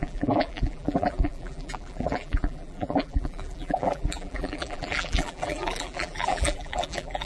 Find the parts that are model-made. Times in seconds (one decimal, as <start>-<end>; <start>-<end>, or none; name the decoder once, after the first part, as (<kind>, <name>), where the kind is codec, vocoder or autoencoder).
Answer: 0.0-7.3 (vocoder, BigVGAN v2)